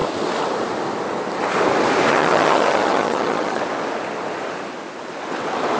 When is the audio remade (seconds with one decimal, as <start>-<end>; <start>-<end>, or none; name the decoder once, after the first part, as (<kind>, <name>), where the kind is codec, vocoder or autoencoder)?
2.1-3.6 (vocoder, HiFi-GAN)